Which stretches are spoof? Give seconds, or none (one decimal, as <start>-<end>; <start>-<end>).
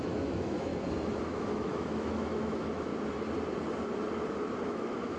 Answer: 0.0-0.7; 1.2-2.9; 4.7-5.2